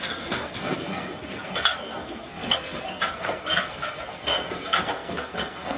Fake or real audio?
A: fake